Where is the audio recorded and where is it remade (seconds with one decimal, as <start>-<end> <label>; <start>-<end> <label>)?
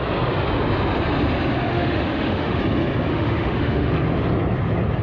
0.0-1.7 recorded; 1.7-2.6 remade; 2.6-3.1 recorded; 3.1-3.9 remade; 3.9-5.0 recorded